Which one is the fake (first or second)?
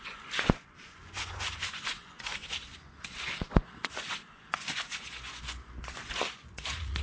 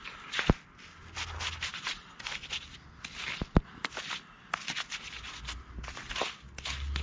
first